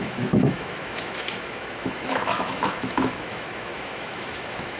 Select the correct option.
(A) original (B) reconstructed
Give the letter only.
B